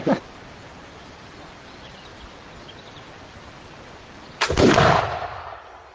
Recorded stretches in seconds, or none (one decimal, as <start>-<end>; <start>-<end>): none